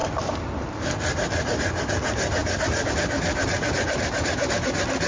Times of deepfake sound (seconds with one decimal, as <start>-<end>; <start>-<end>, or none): none